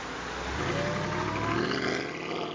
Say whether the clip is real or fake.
real